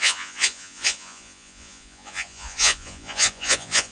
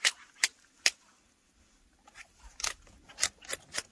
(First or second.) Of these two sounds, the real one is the second